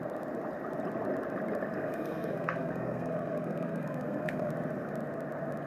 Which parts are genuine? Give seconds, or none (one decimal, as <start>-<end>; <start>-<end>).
0.0-1.7; 4.5-5.7